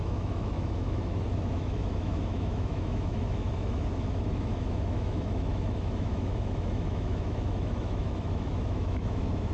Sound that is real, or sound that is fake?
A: fake